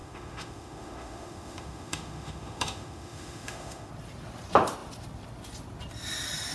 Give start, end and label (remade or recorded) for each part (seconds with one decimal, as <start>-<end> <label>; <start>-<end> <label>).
0.0-3.9 remade; 3.9-6.5 recorded